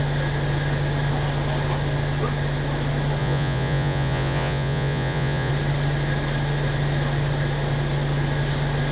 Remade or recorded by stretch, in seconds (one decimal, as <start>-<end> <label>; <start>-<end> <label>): 0.0-3.2 recorded; 3.2-5.5 remade; 5.5-8.9 recorded